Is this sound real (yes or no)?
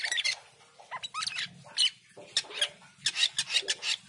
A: yes